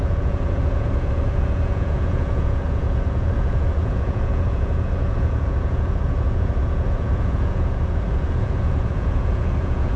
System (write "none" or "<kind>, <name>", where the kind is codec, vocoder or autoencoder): vocoder, Vocos